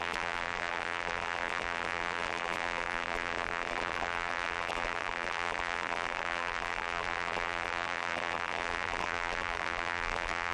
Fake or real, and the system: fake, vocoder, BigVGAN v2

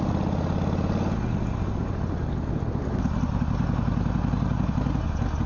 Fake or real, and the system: real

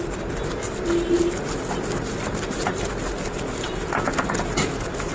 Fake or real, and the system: real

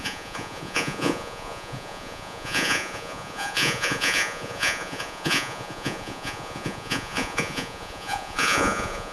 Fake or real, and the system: fake, vocoder, Vocos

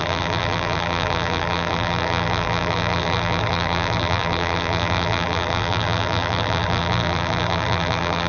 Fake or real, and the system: fake, vocoder, BigVGAN v2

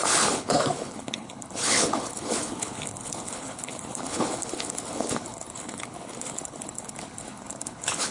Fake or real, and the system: fake, codec, HILCodec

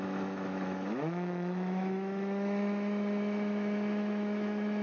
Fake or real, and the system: fake, autoencoder, DAC-VAE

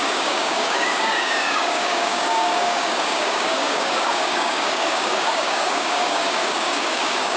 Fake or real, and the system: fake, codec, DAC